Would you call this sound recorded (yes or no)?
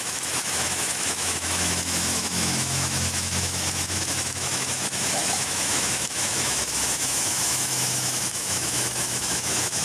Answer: no